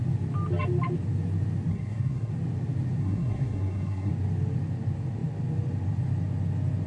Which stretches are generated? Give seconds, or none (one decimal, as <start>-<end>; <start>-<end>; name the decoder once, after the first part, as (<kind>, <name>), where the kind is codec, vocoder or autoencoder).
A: 1.7-2.3 (codec, SNAC); 3.0-4.1